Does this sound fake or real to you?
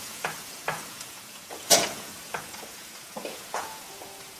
fake